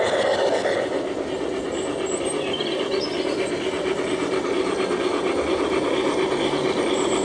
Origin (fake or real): real